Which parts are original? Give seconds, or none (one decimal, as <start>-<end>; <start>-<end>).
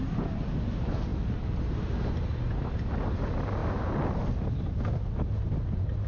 0.0-6.1